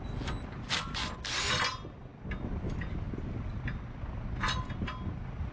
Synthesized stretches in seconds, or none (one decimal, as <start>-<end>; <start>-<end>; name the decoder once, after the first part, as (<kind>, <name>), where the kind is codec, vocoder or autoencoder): none